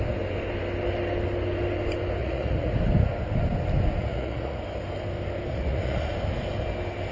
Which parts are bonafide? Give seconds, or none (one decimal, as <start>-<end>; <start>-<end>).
0.0-2.2; 2.7-4.0; 4.6-5.5; 6.1-7.1